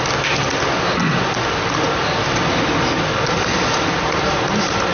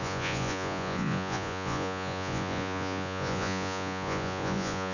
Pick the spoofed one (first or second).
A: second